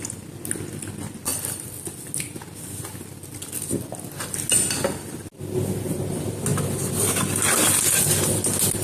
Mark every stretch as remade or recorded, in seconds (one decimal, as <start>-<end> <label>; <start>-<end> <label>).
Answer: 0.0-8.8 recorded